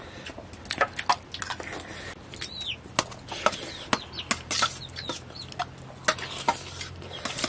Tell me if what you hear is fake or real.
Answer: real